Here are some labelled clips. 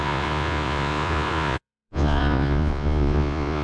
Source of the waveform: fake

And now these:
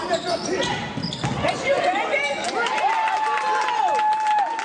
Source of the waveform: real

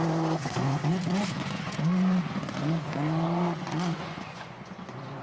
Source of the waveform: fake